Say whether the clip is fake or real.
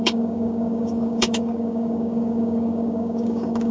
fake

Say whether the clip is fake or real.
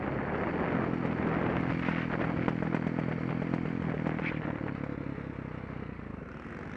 real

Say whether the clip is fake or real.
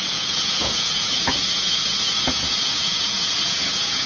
fake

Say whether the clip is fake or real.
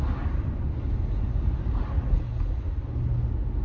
real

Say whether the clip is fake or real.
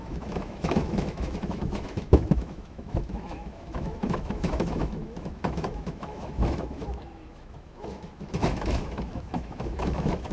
fake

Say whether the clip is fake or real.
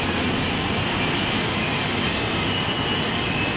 real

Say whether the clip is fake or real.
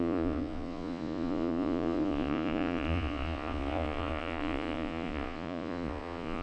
fake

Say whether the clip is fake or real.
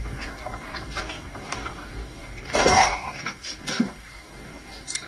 fake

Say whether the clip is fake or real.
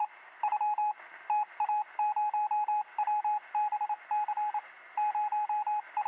real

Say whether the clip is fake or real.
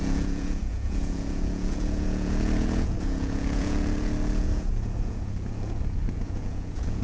fake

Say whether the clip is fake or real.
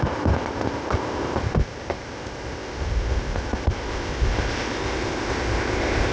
fake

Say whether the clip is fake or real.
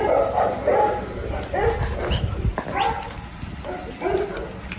real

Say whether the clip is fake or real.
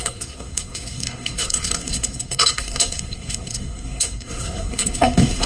fake